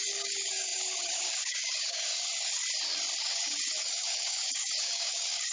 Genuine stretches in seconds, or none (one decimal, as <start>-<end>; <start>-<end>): 2.6-3.2